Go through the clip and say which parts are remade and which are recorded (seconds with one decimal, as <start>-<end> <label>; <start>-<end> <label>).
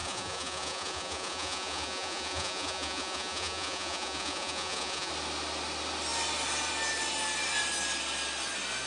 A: 0.0-5.1 remade; 5.1-8.9 recorded